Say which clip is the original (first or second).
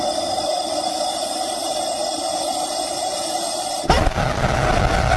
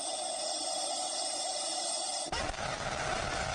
first